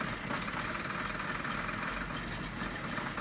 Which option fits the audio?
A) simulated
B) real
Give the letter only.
B